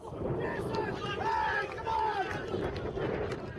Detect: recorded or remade recorded